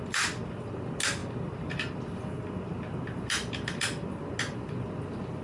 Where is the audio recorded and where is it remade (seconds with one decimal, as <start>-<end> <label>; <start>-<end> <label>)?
0.0-5.4 recorded